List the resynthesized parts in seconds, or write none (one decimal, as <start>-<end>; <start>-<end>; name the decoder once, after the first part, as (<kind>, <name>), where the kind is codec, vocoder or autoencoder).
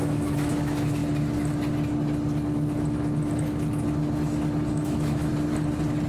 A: 0.0-1.0 (autoencoder, DAC-VAE); 4.7-5.3